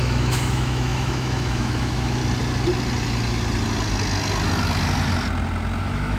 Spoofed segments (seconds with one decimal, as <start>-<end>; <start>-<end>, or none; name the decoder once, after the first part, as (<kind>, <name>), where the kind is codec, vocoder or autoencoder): 0.0-2.2 (autoencoder, DAC-VAE); 5.8-6.2